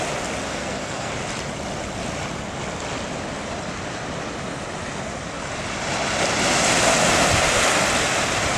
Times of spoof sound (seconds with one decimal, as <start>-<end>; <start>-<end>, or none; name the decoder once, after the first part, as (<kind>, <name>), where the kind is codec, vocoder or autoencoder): 0.5-1.1 (codec, SNAC)